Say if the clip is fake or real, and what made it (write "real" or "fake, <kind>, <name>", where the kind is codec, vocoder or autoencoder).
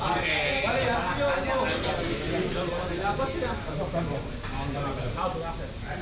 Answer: real